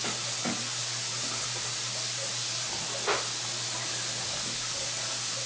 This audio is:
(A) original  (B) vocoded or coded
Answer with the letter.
A